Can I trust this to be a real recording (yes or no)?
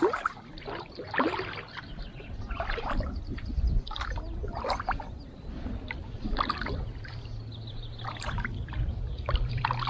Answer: no